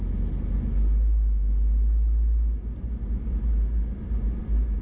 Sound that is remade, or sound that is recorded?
recorded